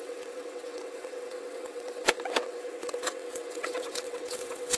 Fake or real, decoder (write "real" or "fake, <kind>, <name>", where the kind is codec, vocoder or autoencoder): fake, vocoder, WaveNeXt